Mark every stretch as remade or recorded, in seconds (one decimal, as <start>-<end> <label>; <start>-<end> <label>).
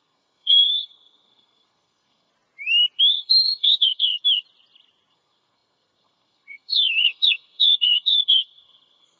0.0-2.3 remade; 2.3-3.1 recorded; 3.1-4.1 remade; 4.1-5.1 recorded; 5.1-9.2 remade